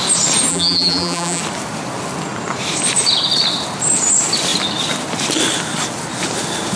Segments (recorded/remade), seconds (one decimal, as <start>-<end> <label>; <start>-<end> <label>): 0.0-0.5 recorded; 0.5-1.4 remade; 1.4-6.8 recorded